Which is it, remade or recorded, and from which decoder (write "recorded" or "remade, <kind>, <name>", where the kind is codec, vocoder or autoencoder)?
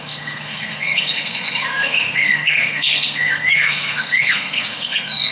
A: remade, codec, SNAC